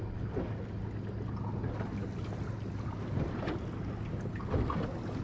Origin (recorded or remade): recorded